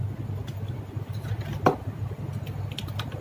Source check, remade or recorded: recorded